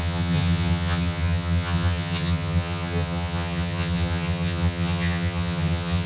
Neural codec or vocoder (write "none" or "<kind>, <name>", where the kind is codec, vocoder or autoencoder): vocoder, HiFi-GAN